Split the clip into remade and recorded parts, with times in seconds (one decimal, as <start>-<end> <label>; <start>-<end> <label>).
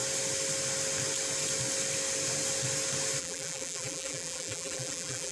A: 0.0-3.2 recorded; 3.2-5.3 remade